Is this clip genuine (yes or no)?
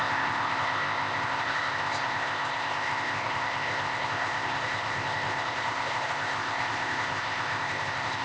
no